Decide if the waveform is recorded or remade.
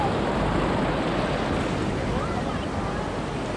recorded